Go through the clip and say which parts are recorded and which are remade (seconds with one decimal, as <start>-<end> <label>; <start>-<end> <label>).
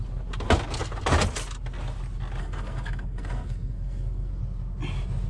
0.0-2.4 recorded; 2.4-4.4 remade; 4.4-5.3 recorded